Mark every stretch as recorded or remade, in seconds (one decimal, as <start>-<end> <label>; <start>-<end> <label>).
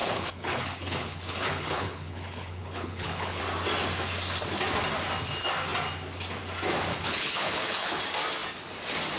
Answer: 0.0-3.4 remade; 3.4-6.9 recorded; 6.9-8.0 remade; 8.0-9.2 recorded